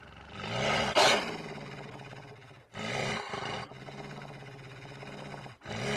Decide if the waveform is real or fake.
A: real